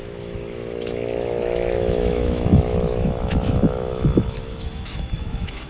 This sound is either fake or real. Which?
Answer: fake